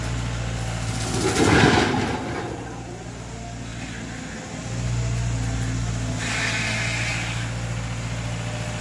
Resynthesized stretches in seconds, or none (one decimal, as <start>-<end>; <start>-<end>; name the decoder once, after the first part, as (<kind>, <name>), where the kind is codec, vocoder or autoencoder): none